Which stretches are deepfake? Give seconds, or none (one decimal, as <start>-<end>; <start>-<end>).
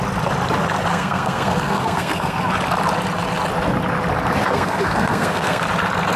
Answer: 0.9-2.4; 4.4-5.6